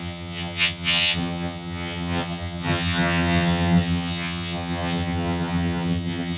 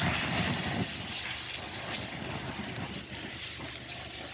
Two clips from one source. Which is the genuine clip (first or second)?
second